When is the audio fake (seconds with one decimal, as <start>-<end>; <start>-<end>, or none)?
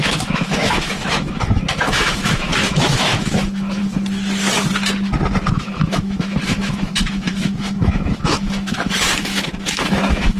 0.0-3.8; 5.5-10.4